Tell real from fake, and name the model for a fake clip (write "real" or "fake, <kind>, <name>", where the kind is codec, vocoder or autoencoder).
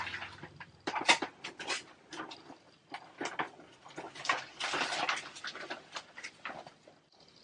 real